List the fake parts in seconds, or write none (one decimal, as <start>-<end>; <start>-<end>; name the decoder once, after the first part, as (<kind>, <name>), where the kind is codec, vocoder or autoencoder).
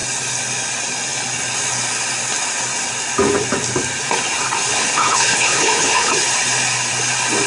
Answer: 4.7-6.1 (codec, HILCodec)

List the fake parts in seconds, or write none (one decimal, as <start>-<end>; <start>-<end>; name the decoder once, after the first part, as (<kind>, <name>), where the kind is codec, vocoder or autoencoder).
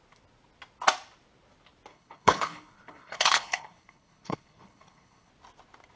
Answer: 1.9-5.3 (codec, HILCodec)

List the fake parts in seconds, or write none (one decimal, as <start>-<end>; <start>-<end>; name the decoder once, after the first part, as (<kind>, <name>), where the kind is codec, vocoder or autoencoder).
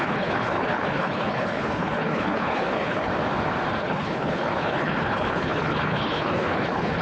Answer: 0.0-3.1 (codec, HILCodec); 3.8-7.0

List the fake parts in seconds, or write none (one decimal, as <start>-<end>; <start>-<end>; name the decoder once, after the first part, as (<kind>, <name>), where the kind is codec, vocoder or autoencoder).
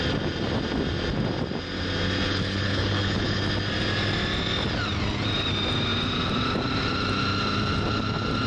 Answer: 2.3-3.4 (codec, HILCodec)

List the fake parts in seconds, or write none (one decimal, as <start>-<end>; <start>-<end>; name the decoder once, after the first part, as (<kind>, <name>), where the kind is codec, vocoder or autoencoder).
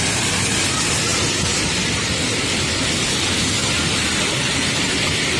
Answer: none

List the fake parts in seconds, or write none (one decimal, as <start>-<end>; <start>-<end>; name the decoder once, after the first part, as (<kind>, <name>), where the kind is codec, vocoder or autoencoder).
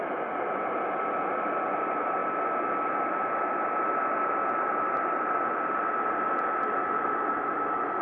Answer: none